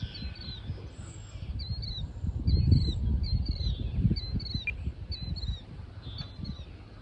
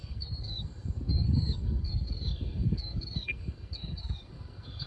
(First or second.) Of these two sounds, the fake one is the second